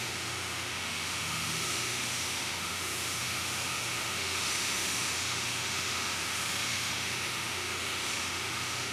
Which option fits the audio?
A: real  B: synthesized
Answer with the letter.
B